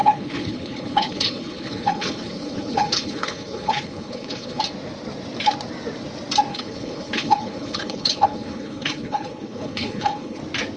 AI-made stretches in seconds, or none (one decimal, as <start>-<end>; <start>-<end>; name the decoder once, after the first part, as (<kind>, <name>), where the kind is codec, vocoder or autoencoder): 0.0-4.6 (codec, HILCodec); 6.5-10.4